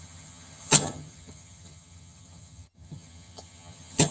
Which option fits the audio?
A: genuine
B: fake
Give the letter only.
B